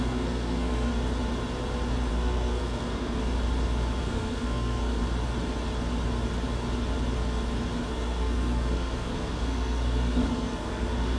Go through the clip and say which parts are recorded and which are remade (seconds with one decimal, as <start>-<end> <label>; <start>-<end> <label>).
0.0-0.9 remade; 0.9-2.1 recorded; 2.1-3.2 remade; 3.2-4.0 recorded; 4.0-5.0 remade; 5.0-7.9 recorded; 7.9-11.2 remade